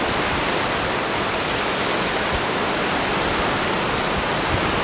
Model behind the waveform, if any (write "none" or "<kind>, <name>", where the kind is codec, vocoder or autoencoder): none